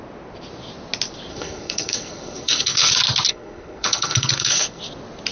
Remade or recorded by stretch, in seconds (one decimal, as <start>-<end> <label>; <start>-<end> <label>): 0.0-1.3 recorded; 1.3-2.9 remade; 2.9-3.3 recorded; 3.3-4.8 remade; 4.8-5.3 recorded